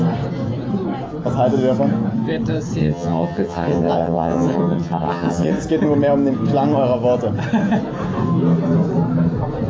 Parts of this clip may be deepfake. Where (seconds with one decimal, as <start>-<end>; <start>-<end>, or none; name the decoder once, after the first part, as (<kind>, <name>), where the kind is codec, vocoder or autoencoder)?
2.8-5.5 (vocoder, HiFi-GAN)